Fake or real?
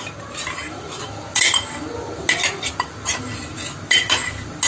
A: real